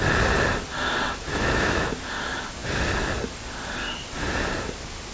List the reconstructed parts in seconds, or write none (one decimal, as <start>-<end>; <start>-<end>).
1.3-1.9